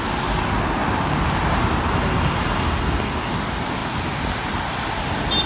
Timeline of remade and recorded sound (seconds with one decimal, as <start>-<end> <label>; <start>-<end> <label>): 0.0-5.5 recorded